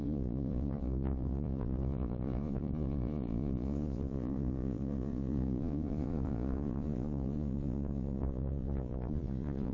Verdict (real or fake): fake